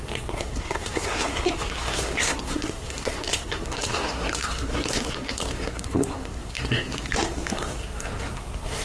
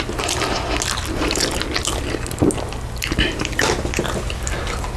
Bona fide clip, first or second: second